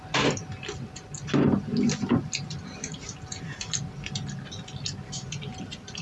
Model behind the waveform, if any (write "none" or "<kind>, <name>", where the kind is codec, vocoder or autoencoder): none